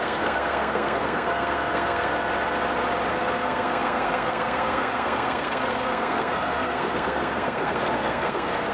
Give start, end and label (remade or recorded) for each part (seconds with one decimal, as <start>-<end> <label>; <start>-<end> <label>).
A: 0.0-2.1 remade; 2.1-3.1 recorded; 3.1-8.7 remade